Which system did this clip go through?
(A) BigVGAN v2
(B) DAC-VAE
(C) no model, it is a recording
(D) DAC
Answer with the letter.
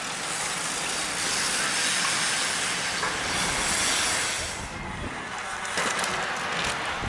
C